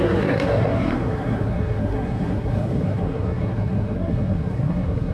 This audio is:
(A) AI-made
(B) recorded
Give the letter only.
A